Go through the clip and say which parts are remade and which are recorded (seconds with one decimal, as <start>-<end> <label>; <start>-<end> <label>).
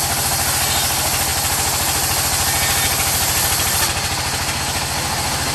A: 0.0-5.5 recorded